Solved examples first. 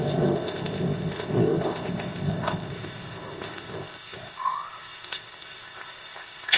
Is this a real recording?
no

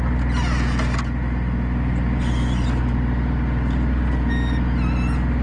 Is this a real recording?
yes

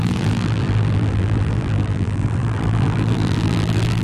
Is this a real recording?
no